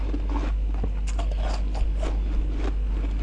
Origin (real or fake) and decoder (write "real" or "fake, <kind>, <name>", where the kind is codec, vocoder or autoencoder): real